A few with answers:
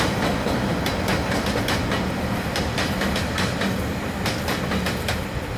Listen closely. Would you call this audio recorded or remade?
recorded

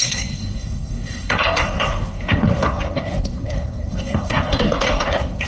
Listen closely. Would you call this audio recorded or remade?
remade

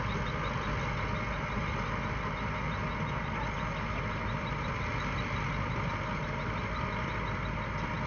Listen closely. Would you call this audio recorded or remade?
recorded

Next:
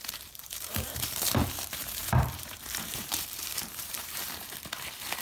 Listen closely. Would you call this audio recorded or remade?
remade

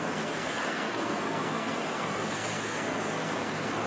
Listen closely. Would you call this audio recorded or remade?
remade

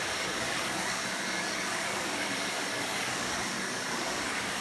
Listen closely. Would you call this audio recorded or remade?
remade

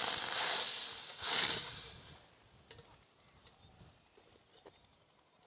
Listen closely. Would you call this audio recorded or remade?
recorded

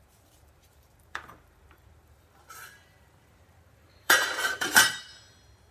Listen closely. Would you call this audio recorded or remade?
remade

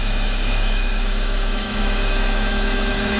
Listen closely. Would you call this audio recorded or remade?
remade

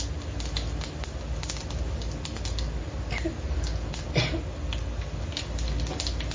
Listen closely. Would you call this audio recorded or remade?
recorded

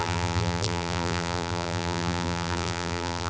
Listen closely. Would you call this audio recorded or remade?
remade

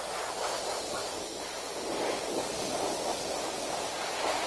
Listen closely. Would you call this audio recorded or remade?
recorded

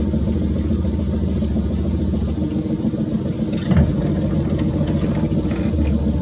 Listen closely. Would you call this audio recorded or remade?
recorded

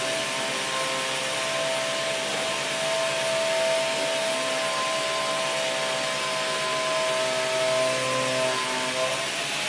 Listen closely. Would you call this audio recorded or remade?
recorded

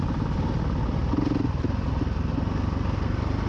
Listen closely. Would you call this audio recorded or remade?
recorded